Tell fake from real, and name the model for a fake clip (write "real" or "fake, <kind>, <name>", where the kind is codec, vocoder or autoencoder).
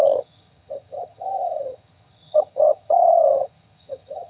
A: fake, vocoder, HiFi-GAN